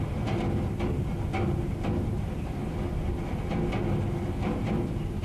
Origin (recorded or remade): recorded